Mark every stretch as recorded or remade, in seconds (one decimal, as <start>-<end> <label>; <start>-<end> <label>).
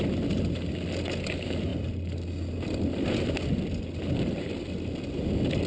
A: 0.0-5.7 recorded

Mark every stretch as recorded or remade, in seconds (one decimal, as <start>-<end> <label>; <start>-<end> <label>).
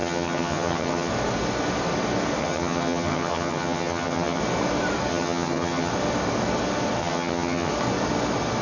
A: 0.0-1.1 remade; 1.1-2.4 recorded; 2.4-4.4 remade; 4.4-5.1 recorded; 5.1-5.9 remade; 5.9-7.0 recorded; 7.0-7.7 remade; 7.7-8.6 recorded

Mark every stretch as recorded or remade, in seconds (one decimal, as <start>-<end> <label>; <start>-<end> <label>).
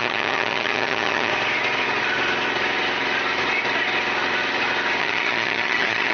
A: 0.0-1.3 remade; 1.3-5.0 recorded; 5.0-6.1 remade